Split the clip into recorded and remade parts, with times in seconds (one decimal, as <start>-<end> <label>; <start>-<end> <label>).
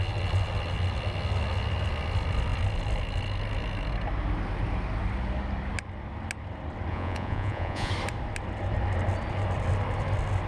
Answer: 0.0-6.9 recorded; 6.9-7.9 remade; 7.9-10.5 recorded